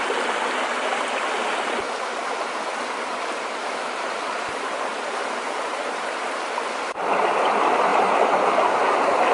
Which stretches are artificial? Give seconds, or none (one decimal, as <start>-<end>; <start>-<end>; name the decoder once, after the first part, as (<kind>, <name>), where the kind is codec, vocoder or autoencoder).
4.9-6.6 (vocoder, BigVGAN v2); 7.9-9.3